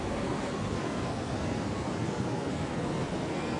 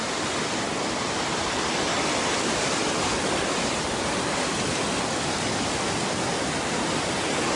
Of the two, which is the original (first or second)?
second